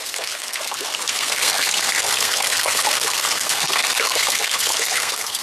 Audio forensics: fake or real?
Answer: fake